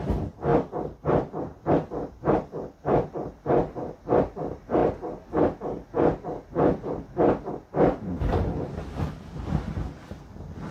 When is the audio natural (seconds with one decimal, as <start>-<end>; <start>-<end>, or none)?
0.0-10.7